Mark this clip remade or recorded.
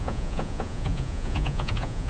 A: remade